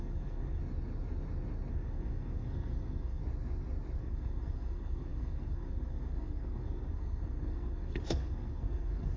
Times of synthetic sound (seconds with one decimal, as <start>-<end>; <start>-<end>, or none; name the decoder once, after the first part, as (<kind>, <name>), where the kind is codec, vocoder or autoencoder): 0.0-0.6 (codec, SNAC); 1.7-3.2; 4.0-9.2